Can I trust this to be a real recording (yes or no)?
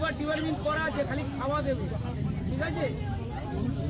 yes